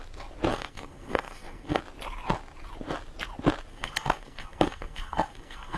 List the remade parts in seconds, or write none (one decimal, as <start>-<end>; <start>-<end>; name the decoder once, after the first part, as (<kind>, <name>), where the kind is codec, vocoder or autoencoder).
0.5-1.8 (codec, SNAC); 3.7-5.8